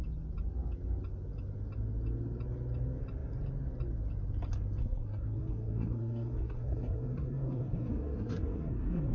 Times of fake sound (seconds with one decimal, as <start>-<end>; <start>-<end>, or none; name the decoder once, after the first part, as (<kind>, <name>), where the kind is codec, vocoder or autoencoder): 4.8-9.1 (codec, SNAC)